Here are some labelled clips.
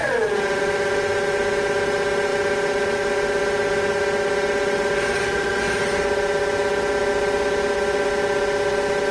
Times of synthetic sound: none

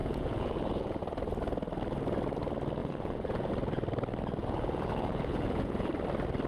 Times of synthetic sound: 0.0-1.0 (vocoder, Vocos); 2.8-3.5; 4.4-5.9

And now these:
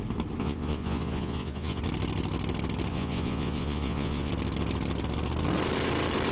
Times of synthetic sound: 0.4-1.8 (vocoder, Vocos); 2.9-4.3

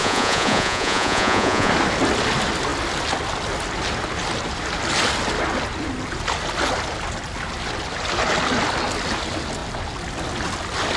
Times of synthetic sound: 0.0-1.7 (vocoder, Vocos)